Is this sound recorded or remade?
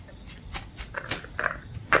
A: recorded